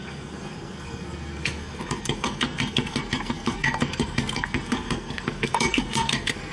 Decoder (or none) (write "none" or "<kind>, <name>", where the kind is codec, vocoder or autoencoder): codec, SNAC